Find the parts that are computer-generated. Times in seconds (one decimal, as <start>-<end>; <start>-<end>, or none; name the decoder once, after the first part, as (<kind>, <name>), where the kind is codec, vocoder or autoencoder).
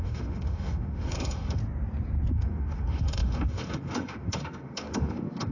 0.0-1.6 (autoencoder, DAC-VAE); 2.3-5.5